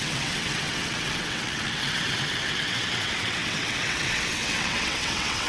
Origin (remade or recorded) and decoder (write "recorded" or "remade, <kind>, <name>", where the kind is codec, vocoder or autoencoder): remade, vocoder, WaveNeXt